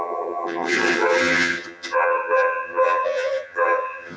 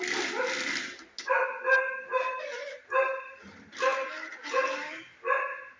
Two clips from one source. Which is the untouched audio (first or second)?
second